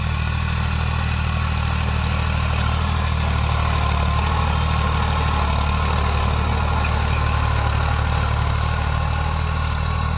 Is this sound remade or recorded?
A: recorded